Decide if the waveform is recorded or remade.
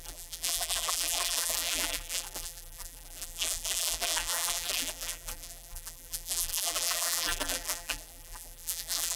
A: remade